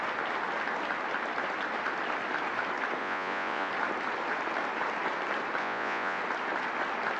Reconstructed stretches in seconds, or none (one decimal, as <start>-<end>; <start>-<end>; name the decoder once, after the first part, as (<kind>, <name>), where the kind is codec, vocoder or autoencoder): 3.0-3.7 (vocoder, Vocos); 5.6-6.2

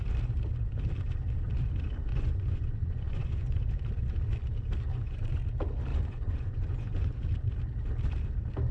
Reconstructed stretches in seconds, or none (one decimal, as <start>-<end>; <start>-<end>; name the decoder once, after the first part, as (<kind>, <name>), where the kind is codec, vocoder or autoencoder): 2.1-3.7 (vocoder, Vocos); 4.9-5.4; 5.9-7.1

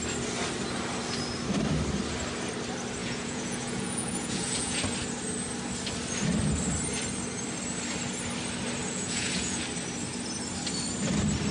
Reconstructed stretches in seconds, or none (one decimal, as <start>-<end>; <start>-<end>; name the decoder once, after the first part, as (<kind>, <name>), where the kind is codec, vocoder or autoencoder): 3.0-4.8 (vocoder, Vocos); 8.8-9.6

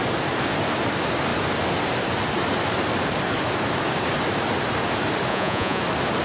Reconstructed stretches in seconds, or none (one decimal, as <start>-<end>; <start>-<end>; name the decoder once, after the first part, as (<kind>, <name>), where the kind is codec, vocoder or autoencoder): 5.3-5.8 (vocoder, Vocos)

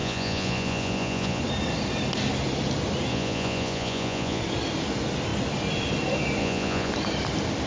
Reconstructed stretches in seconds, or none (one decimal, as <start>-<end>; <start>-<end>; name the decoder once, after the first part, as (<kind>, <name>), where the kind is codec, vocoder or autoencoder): 0.0-1.4 (vocoder, Vocos); 3.1-4.4; 6.4-6.9

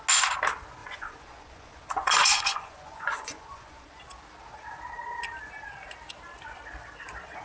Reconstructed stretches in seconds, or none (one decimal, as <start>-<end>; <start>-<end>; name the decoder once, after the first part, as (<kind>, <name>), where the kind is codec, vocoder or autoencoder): 0.8-4.0 (vocoder, Vocos)